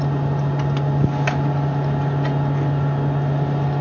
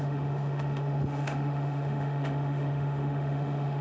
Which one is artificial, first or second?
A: second